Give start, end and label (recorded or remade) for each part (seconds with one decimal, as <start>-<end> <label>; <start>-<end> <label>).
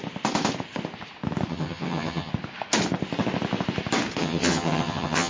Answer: 0.0-1.5 recorded; 1.5-2.3 remade; 2.3-4.2 recorded; 4.2-5.3 remade